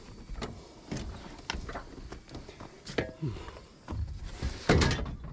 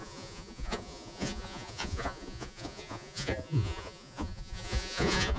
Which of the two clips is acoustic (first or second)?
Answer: first